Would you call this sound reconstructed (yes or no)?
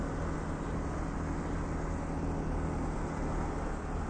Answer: no